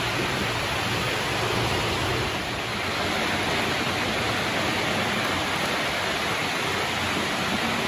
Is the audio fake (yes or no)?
no